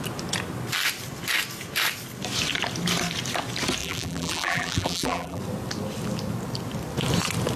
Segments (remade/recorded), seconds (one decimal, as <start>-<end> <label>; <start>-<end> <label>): 0.0-3.8 recorded; 3.8-5.4 remade; 5.4-7.6 recorded